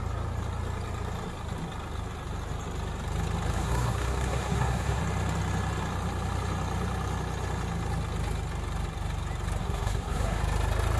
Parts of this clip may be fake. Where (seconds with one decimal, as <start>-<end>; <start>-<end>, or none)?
3.5-5.0; 9.6-10.4